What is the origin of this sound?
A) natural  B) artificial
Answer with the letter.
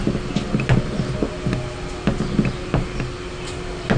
A